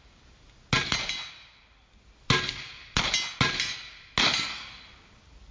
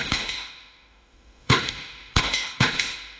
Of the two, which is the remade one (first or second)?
second